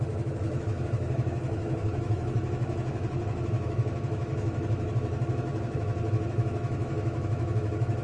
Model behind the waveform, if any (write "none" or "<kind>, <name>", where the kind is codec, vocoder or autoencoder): autoencoder, DAC-VAE